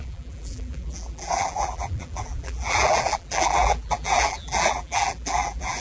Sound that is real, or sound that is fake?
fake